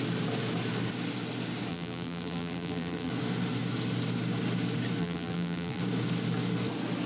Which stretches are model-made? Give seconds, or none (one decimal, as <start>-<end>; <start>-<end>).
1.7-3.1; 5.0-5.8